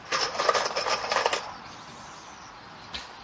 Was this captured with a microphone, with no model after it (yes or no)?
yes